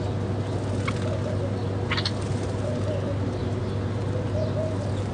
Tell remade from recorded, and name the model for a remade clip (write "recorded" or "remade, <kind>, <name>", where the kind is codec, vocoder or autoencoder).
recorded